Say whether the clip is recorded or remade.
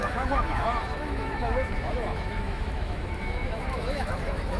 remade